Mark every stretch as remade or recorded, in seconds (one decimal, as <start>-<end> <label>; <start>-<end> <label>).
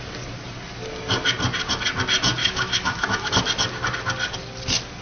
0.0-2.4 recorded; 2.4-3.3 remade; 3.3-5.0 recorded